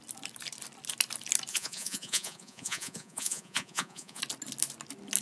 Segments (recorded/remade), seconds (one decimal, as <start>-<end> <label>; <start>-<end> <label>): 0.0-1.5 recorded; 1.5-4.2 remade; 4.2-5.2 recorded